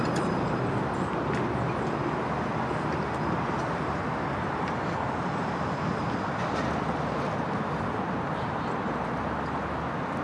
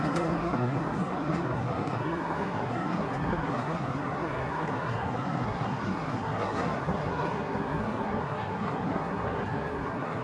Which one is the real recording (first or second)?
first